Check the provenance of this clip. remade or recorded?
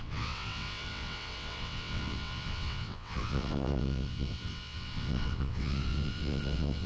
remade